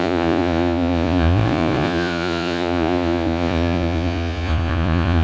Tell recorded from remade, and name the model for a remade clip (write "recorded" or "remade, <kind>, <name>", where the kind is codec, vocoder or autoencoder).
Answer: remade, vocoder, Vocos